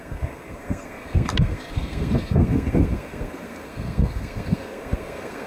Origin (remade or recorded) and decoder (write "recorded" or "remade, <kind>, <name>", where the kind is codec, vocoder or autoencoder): remade, codec, SNAC